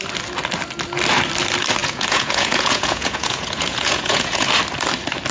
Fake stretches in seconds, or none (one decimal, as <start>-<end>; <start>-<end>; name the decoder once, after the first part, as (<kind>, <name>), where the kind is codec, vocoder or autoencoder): 1.8-4.5 (vocoder, Vocos)